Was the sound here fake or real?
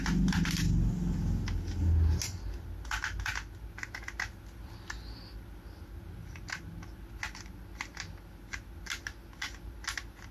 real